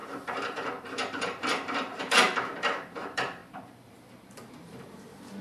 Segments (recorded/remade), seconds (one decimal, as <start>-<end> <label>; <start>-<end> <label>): 0.0-5.4 remade